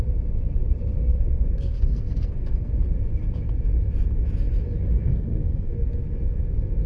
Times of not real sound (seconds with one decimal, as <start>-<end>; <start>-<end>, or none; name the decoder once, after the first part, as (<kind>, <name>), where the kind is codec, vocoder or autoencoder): 1.1-2.7 (codec, SNAC); 4.9-5.8